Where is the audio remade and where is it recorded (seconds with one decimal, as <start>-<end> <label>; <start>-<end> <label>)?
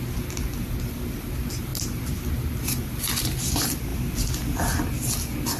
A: 0.0-5.6 recorded